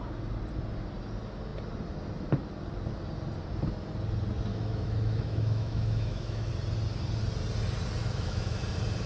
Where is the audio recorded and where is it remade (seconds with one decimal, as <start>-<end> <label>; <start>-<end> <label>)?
0.0-4.5 recorded; 4.5-6.5 remade; 6.5-8.0 recorded; 8.0-8.6 remade; 8.6-9.1 recorded